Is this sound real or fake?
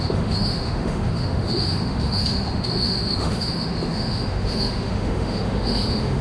fake